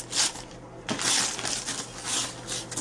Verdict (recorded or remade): recorded